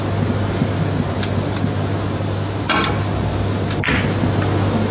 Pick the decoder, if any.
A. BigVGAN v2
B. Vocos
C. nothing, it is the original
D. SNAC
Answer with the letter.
C